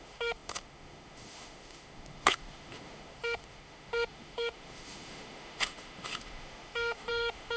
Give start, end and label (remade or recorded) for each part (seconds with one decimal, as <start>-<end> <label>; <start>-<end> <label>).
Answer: 0.0-7.6 remade